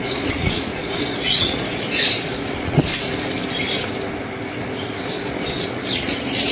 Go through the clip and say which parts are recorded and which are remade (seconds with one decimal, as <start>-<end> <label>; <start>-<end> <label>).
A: 0.0-2.9 remade; 2.9-5.1 recorded; 5.1-6.5 remade